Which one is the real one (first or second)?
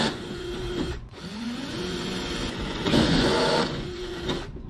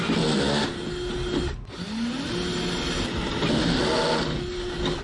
second